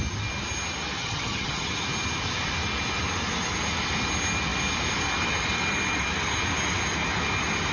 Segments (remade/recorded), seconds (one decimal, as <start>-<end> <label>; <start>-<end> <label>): 0.0-1.0 recorded; 1.0-1.7 remade; 1.7-7.7 recorded